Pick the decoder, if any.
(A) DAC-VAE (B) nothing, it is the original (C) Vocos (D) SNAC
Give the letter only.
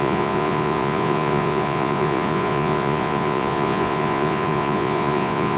C